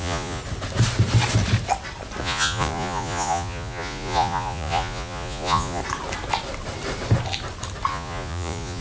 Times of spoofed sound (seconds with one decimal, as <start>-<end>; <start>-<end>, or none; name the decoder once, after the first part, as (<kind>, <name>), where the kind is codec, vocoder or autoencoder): 0.0-0.4 (vocoder, Vocos); 2.2-5.8; 7.9-8.8